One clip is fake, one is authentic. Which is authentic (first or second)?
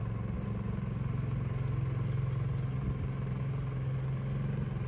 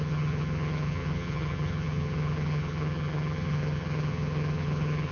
first